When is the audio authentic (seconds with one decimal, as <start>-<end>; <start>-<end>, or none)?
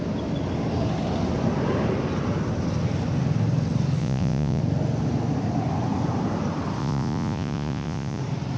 0.0-4.0; 4.6-6.8; 8.2-8.6